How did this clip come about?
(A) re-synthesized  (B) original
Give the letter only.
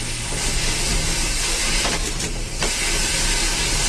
B